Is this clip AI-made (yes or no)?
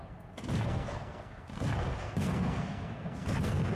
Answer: yes